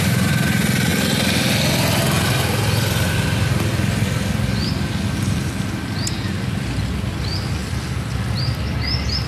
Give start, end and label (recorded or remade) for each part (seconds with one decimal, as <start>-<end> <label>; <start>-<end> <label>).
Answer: 0.0-9.3 recorded